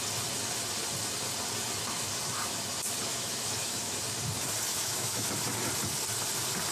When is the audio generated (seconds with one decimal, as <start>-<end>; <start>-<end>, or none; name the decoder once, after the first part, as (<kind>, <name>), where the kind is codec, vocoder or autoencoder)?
3.1-3.9 (autoencoder, DAC-VAE); 4.7-5.3